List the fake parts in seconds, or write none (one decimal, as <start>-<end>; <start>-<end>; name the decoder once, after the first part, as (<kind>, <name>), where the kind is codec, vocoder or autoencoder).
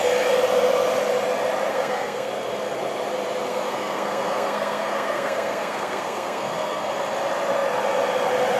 1.7-2.3 (codec, SNAC); 3.5-6.9